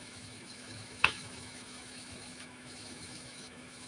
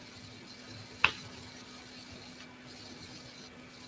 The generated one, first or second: first